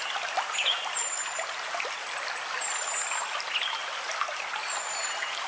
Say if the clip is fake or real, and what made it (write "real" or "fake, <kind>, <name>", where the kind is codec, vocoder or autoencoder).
real